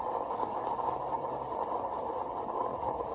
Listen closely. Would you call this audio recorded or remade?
remade